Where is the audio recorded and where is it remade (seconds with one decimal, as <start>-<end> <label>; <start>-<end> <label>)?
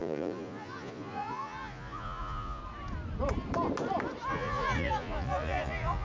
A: 0.0-2.6 remade; 2.6-4.3 recorded; 4.3-6.0 remade